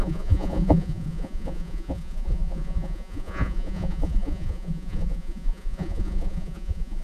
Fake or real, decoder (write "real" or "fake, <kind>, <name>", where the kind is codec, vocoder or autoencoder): fake, vocoder, Vocos